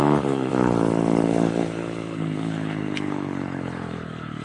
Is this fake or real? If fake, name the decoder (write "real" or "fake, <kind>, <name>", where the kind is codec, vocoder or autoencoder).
fake, codec, HILCodec